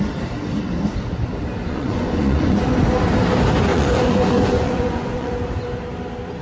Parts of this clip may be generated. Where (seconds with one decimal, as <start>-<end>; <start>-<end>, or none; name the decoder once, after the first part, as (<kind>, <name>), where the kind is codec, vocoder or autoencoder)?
1.6-2.6 (vocoder, Vocos); 3.7-5.3